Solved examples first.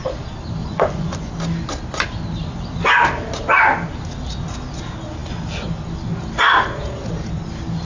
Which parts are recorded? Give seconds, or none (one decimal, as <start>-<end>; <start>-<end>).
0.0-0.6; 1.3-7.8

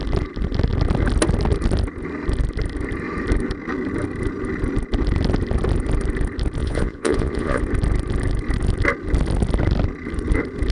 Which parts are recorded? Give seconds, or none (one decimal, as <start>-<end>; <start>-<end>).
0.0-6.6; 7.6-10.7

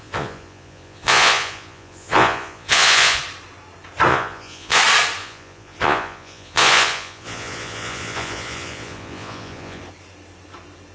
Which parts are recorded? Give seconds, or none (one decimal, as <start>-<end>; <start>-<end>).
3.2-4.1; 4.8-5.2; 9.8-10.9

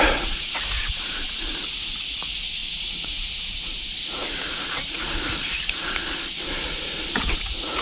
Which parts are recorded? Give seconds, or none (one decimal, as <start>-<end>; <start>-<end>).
none

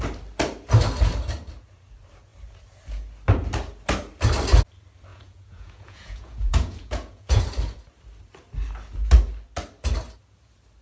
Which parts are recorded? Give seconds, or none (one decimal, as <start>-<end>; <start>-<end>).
0.0-5.1; 7.4-10.8

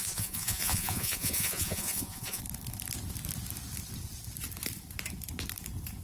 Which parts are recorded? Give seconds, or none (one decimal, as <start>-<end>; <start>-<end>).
2.4-6.0